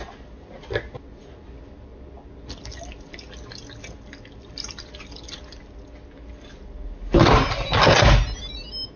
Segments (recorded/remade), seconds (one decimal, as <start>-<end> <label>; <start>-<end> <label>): 0.0-9.0 recorded